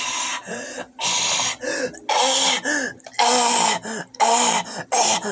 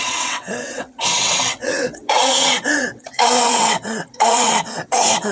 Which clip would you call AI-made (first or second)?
second